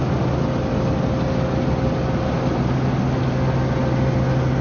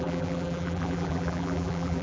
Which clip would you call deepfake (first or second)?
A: second